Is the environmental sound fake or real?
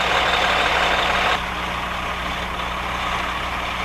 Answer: real